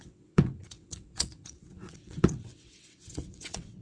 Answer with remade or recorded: remade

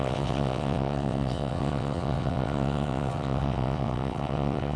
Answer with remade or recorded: remade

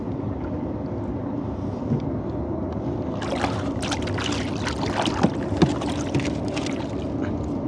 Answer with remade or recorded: recorded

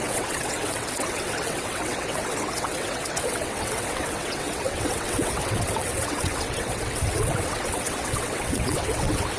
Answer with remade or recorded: remade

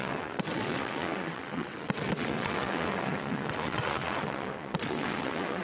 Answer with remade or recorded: remade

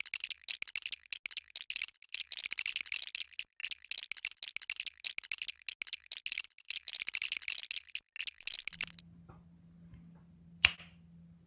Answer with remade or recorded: recorded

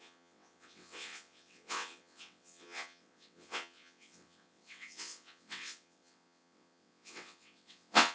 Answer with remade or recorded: remade